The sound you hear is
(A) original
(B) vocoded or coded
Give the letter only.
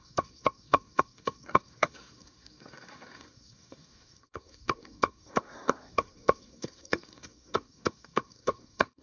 B